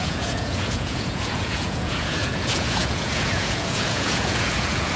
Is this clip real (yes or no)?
no